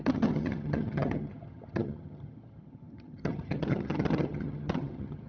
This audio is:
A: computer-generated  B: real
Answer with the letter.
A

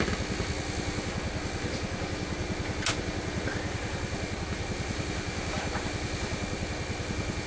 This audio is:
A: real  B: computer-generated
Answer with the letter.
A